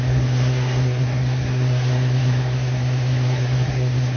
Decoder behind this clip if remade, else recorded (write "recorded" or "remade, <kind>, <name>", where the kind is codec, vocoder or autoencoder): remade, codec, SNAC